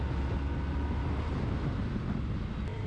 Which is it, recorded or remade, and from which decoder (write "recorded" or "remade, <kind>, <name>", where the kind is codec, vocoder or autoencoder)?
recorded